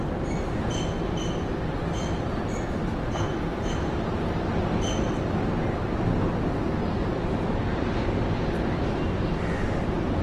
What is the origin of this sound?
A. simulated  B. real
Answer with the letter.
B